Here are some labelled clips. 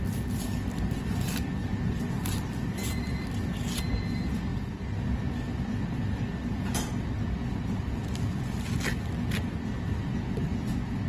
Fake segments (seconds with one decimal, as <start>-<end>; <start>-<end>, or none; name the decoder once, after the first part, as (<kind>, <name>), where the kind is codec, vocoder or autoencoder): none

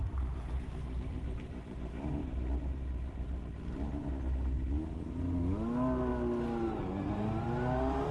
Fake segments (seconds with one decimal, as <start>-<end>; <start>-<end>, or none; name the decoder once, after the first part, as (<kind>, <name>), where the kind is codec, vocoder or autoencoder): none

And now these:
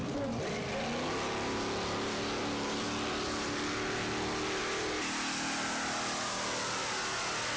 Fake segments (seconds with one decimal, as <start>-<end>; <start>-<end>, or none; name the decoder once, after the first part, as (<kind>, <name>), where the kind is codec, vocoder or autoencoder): none

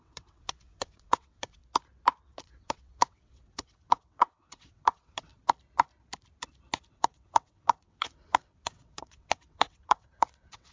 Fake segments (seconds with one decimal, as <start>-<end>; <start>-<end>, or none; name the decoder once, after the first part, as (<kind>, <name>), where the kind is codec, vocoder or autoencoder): 0.0-1.6 (vocoder, WaveNeXt); 2.2-5.3; 6.9-10.7

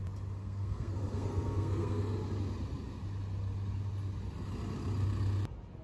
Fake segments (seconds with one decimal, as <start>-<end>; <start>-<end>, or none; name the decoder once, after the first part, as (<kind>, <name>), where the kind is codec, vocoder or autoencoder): 0.4-2.0 (codec, SNAC)

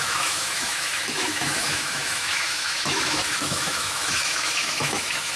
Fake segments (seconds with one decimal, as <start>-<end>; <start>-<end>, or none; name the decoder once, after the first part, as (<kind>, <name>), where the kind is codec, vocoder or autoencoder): 0.0-5.4 (autoencoder, DAC-VAE)

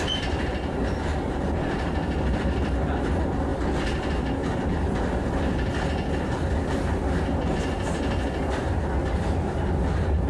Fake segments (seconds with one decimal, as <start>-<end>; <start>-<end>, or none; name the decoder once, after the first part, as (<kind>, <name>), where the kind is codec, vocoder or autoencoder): 1.1-1.6 (vocoder, BigVGAN v2); 9.0-9.6

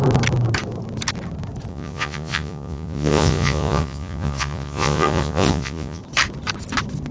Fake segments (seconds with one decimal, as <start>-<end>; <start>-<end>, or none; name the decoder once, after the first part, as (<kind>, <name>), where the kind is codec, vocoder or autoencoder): 1.7-6.0 (vocoder, Vocos)